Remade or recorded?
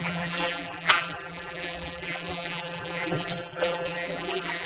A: remade